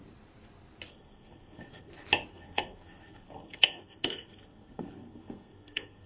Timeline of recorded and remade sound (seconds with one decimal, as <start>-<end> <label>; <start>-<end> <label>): 0.0-0.9 recorded; 0.9-1.9 remade; 1.9-2.3 recorded; 2.3-6.1 remade